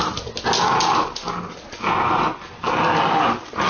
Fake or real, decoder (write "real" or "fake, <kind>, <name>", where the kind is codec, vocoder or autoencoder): real